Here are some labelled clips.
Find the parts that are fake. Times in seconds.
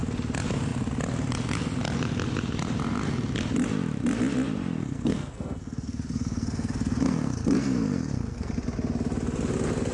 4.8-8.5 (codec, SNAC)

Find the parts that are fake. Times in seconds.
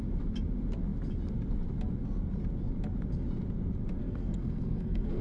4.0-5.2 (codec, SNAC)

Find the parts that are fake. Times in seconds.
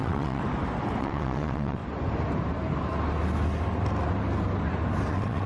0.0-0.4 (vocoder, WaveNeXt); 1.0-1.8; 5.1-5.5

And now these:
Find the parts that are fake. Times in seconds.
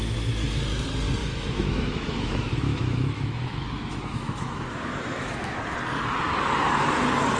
1.2-5.6 (autoencoder, DAC-VAE)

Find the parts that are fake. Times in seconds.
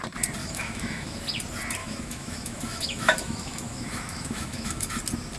0.4-1.2 (autoencoder, DAC-VAE); 1.8-4.9